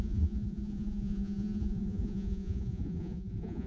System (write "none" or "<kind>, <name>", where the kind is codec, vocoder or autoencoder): vocoder, Vocos